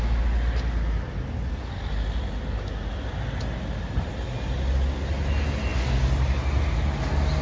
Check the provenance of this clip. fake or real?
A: real